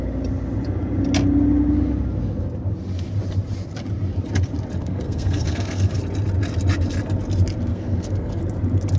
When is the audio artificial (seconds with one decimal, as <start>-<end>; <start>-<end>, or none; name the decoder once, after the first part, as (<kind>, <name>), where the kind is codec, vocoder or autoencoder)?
4.8-6.0 (codec, SNAC); 7.7-8.4